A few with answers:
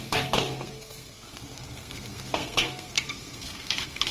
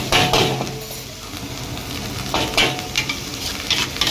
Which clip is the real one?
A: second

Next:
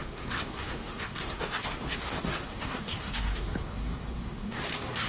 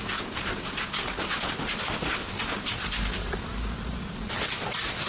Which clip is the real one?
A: second